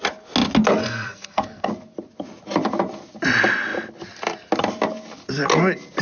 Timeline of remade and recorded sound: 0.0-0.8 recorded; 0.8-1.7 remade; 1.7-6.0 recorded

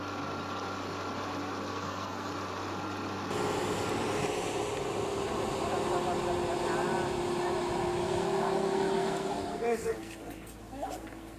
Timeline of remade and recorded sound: 0.0-1.7 recorded; 1.7-2.3 remade; 2.3-7.9 recorded; 7.9-11.4 remade

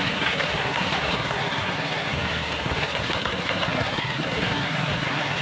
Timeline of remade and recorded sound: 0.0-5.4 remade

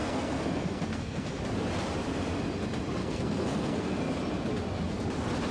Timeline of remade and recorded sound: 0.0-1.4 remade; 1.4-3.0 recorded; 3.0-4.0 remade; 4.0-5.5 recorded

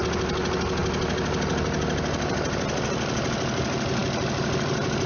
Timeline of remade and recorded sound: 0.0-5.1 recorded

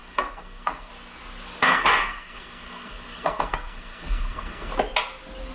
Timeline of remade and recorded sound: 0.0-0.9 remade; 0.9-1.6 recorded; 1.6-4.7 remade; 4.7-5.5 recorded

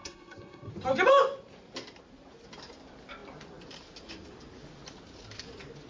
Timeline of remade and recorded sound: 0.0-0.7 remade; 0.7-5.9 recorded